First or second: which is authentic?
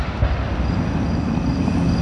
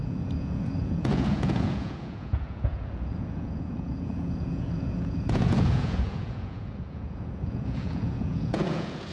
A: first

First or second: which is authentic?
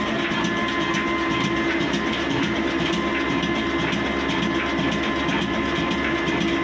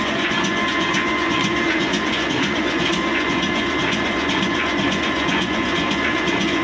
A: first